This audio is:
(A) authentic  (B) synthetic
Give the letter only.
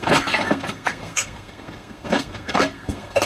B